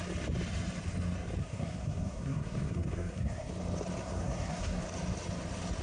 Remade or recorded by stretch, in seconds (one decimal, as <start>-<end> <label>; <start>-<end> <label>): 0.0-1.4 recorded; 1.4-3.5 remade; 3.5-4.0 recorded; 4.0-4.8 remade; 4.8-5.8 recorded